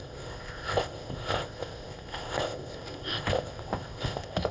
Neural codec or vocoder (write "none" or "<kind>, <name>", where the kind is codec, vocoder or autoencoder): codec, ZipCodec